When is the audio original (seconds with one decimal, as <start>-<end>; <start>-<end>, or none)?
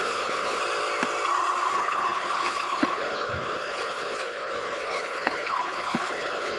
0.6-1.7